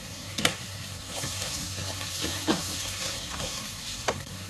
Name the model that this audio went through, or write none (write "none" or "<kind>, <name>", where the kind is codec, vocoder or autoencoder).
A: codec, SNAC